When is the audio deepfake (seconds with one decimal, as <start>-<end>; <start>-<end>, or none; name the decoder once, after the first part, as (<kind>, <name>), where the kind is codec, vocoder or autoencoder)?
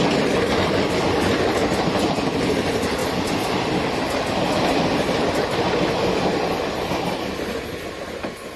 none